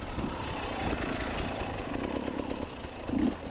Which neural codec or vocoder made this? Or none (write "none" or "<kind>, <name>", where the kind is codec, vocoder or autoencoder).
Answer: none